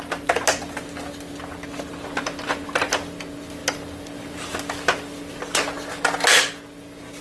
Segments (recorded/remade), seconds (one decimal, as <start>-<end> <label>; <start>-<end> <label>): 0.0-7.2 recorded